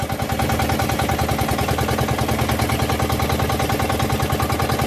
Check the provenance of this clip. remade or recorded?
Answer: recorded